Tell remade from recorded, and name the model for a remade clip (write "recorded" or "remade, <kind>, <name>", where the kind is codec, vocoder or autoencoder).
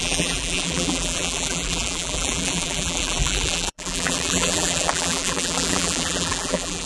remade, vocoder, BigVGAN v2